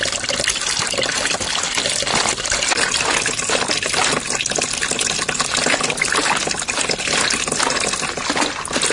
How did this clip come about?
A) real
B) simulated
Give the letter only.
A